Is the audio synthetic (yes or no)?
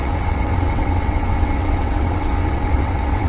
yes